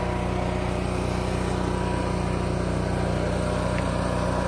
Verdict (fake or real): real